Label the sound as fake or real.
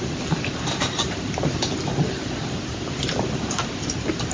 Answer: fake